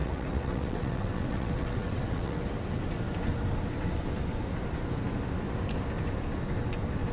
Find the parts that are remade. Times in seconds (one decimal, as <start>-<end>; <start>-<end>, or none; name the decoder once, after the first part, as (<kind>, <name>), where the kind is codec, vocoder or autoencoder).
0.0-2.4 (vocoder, WaveNeXt)

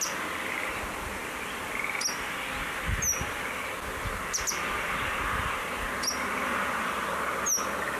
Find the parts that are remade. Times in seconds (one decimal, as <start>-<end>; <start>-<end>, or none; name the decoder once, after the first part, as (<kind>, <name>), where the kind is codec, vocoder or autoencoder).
none

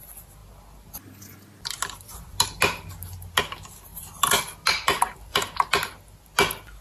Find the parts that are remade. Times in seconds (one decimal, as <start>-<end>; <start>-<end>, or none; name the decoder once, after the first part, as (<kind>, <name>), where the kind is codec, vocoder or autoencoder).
none

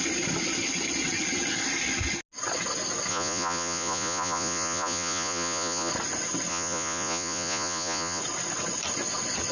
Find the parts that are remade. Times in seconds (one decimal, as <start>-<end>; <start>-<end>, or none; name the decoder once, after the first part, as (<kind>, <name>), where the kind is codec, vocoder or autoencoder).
3.1-5.9 (vocoder, Vocos); 6.5-8.2

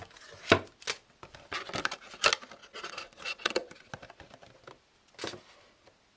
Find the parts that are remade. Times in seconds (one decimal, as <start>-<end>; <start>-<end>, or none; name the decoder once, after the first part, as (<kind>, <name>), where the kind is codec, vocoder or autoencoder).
2.6-3.9 (vocoder, Vocos)

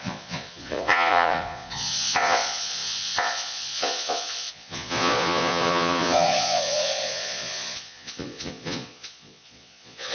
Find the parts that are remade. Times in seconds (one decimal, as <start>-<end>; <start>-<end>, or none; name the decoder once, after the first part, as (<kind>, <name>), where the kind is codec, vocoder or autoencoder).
0.0-10.1 (vocoder, Vocos)